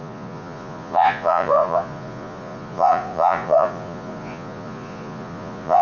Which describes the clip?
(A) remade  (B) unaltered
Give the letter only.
A